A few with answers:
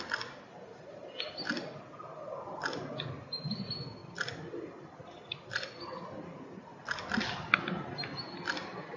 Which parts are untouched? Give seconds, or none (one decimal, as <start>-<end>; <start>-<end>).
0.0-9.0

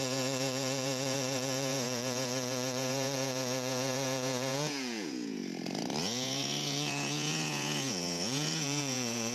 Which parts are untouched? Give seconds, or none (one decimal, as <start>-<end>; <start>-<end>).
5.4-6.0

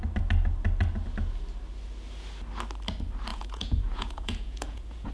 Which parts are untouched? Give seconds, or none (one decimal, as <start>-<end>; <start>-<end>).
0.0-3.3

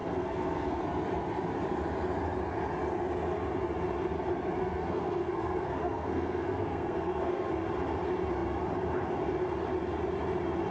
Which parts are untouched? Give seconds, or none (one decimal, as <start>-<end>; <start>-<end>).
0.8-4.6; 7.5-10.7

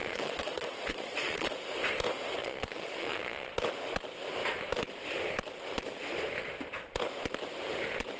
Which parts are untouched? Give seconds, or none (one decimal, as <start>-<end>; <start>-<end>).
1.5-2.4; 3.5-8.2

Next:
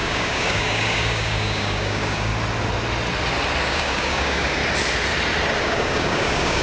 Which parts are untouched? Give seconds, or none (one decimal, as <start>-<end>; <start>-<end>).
2.3-3.6; 4.6-5.6

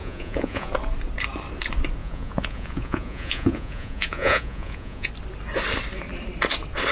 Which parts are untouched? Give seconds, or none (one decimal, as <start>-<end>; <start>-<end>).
0.7-2.0; 5.1-6.9

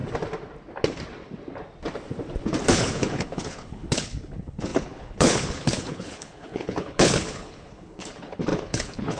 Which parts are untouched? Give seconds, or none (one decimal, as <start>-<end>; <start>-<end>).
0.0-2.7